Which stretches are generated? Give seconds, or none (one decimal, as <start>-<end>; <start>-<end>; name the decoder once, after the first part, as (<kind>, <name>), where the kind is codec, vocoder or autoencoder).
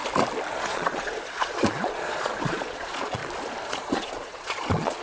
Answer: 0.5-3.2 (vocoder, Vocos); 3.7-5.0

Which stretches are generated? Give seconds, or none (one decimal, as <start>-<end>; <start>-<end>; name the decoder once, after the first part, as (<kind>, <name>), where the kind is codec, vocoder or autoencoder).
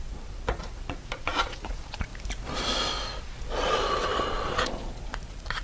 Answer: 0.0-2.1 (vocoder, Vocos); 3.2-5.6